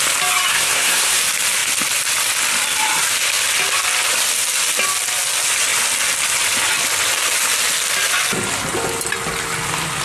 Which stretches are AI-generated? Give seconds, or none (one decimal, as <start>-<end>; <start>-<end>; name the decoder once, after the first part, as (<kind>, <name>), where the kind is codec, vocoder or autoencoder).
0.5-1.2 (codec, SNAC)